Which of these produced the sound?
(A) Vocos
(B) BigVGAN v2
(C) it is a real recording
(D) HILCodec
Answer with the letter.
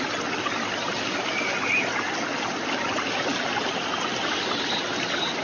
C